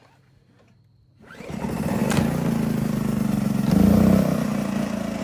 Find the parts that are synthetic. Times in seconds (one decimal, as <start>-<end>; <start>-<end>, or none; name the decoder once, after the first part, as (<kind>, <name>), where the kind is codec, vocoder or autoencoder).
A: none